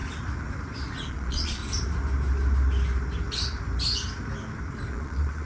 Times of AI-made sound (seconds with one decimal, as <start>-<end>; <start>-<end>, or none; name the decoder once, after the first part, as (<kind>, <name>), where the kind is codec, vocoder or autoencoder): 1.1-1.6 (vocoder, Vocos); 4.9-5.5